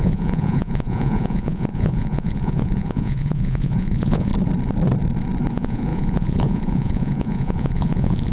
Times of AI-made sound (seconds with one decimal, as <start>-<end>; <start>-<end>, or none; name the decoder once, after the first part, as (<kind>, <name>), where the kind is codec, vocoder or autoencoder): 0.0-4.3 (vocoder, Vocos); 5.5-8.3